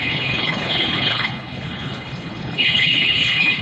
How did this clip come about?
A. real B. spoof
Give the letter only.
B